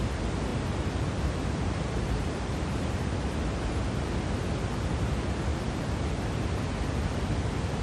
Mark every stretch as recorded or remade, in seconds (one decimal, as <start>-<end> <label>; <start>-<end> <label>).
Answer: 0.0-0.5 recorded; 0.5-4.1 remade; 4.1-5.5 recorded; 5.5-6.2 remade; 6.2-7.8 recorded